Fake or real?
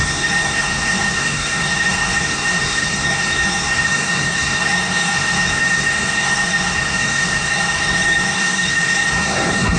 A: fake